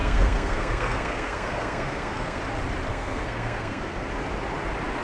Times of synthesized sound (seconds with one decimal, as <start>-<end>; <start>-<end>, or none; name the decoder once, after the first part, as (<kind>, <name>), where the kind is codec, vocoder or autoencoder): 0.0-2.4 (codec, SNAC); 2.9-4.1